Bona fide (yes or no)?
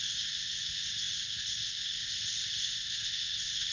no